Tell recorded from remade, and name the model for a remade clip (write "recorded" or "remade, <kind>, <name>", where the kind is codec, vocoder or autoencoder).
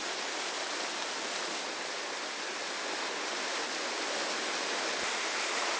recorded